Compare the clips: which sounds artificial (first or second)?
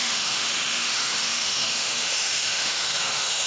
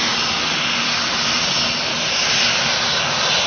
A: first